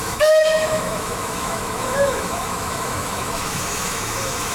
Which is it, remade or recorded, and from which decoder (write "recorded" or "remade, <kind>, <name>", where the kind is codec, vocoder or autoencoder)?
remade, autoencoder, DAC-VAE